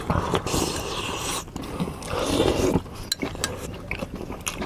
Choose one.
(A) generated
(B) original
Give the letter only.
B